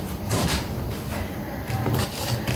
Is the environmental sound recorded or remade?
recorded